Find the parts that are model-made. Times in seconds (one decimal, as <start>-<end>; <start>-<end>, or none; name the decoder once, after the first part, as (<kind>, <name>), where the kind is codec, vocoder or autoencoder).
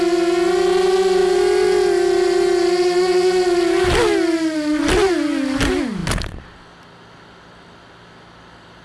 none